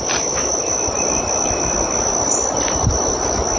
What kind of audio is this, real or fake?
real